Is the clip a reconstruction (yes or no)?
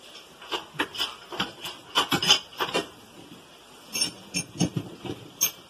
yes